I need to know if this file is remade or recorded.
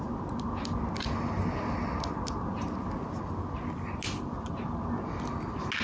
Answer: recorded